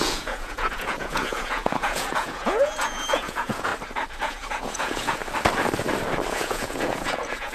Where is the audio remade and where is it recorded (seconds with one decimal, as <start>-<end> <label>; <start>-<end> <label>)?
0.0-3.7 remade; 3.7-4.2 recorded; 4.2-5.2 remade; 5.2-6.3 recorded; 6.3-7.5 remade